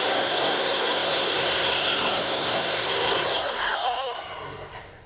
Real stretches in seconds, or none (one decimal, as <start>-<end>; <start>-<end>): none